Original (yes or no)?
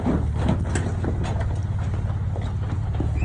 yes